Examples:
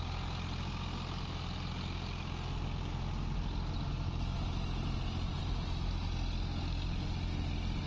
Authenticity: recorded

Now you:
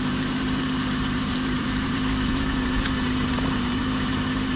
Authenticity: remade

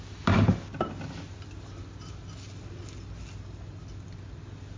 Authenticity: recorded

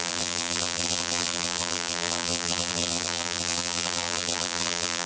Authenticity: remade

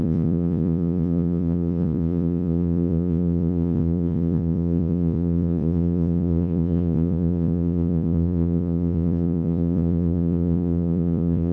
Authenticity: remade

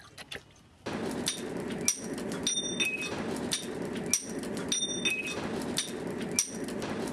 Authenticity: recorded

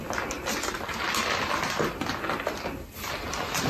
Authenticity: recorded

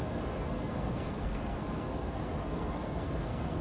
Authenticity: remade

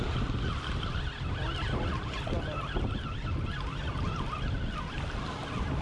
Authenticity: recorded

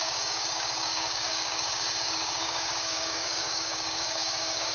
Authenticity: remade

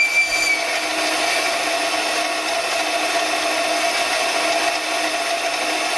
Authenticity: recorded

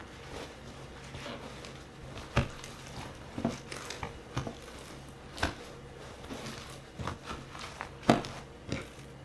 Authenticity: recorded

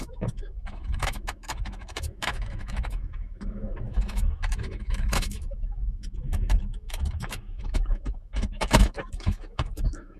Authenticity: remade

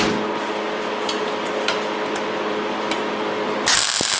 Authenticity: recorded